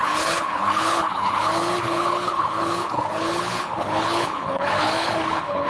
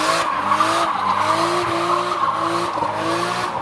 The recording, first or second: second